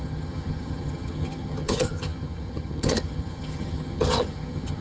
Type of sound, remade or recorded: remade